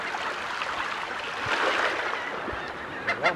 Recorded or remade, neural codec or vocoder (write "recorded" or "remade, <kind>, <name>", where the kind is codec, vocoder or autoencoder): recorded